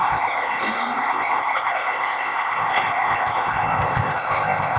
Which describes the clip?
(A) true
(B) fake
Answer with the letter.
B